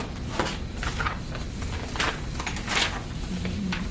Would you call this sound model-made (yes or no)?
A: no